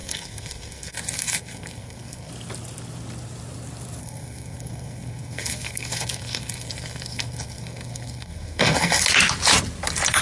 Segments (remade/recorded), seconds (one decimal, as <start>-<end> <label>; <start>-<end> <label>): 0.0-2.3 remade; 2.3-4.0 recorded; 4.0-9.0 remade; 9.0-10.2 recorded